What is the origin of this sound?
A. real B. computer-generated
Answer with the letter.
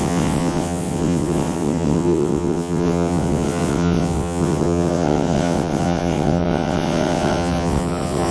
B